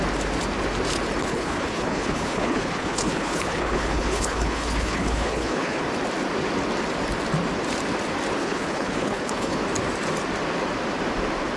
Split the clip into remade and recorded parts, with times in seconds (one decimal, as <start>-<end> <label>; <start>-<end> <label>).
0.0-1.2 recorded; 1.2-5.8 remade; 5.8-8.4 recorded; 8.4-9.6 remade; 9.6-11.6 recorded